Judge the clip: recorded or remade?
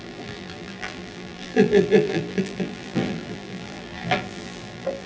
remade